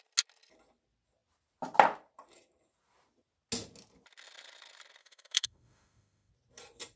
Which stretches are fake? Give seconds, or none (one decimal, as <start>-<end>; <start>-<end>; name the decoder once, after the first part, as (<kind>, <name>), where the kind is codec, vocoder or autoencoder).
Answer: 5.0-6.3 (autoencoder, DAC-VAE)